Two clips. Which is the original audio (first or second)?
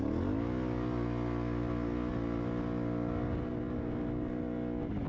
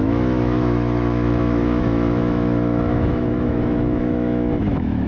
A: first